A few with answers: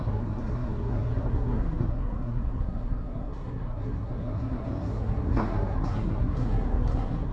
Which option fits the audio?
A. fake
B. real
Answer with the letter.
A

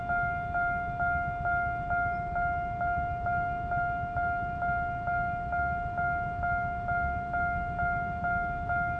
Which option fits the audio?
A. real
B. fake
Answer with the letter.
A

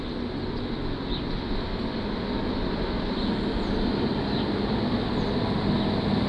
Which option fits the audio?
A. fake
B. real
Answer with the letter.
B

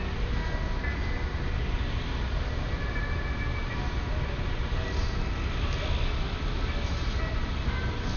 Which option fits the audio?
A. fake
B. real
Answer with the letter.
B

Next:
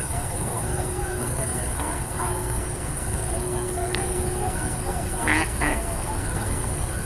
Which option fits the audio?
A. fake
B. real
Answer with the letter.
A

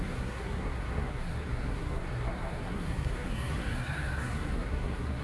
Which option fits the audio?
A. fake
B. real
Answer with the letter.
A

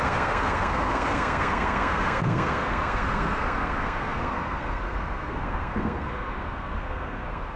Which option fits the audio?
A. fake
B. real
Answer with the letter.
A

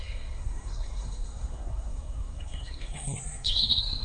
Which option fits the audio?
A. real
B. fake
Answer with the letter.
B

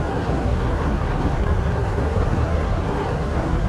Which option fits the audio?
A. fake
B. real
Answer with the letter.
A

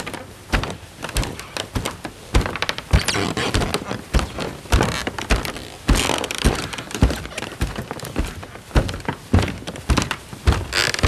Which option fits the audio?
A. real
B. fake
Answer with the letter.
A